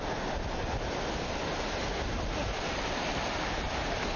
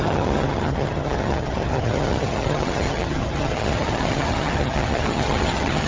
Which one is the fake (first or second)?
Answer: second